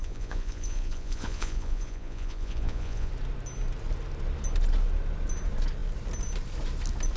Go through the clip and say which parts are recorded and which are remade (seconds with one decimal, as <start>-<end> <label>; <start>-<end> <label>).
0.0-3.1 remade; 3.1-7.2 recorded